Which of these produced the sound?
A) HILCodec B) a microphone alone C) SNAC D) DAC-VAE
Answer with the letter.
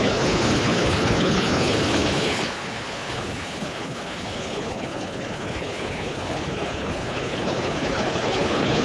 A